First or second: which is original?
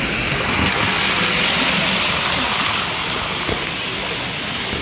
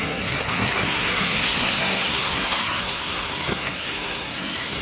first